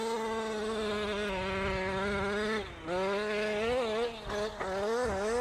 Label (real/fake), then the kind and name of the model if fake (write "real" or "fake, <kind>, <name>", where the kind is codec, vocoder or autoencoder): real